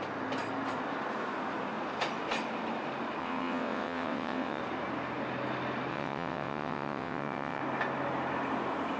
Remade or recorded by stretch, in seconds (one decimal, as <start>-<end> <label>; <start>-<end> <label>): 0.0-3.2 recorded; 3.2-4.6 remade; 4.6-5.9 recorded; 5.9-7.6 remade; 7.6-9.0 recorded